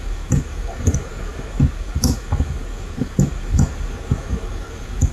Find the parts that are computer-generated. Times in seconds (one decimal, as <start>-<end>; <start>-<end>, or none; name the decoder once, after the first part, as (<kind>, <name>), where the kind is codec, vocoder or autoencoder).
0.0-5.1 (codec, DAC)